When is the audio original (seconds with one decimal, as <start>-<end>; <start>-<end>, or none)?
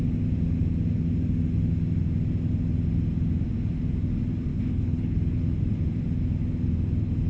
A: 0.0-4.5; 5.4-7.3